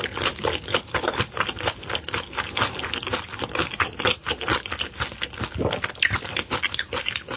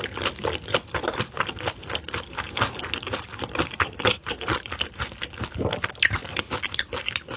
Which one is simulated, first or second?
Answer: second